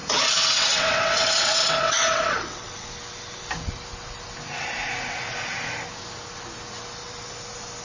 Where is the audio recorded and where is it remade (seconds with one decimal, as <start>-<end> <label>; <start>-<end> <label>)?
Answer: 0.0-2.9 remade; 2.9-7.8 recorded